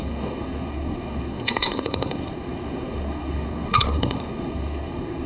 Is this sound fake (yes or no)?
yes